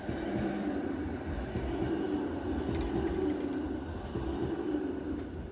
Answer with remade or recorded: recorded